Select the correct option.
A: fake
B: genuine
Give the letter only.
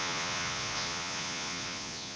A